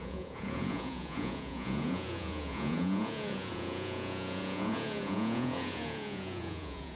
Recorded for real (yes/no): no